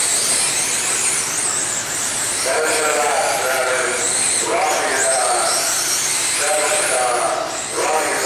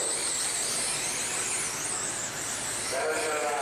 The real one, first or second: second